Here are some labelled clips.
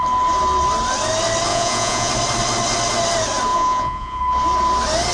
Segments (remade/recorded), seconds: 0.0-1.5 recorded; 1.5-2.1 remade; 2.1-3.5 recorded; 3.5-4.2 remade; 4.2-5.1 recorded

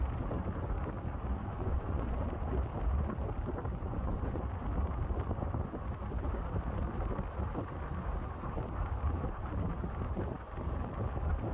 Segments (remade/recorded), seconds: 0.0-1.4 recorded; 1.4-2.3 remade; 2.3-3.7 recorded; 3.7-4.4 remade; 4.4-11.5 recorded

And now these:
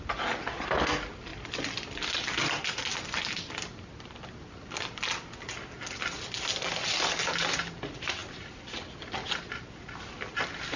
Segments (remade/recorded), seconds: 0.0-10.8 recorded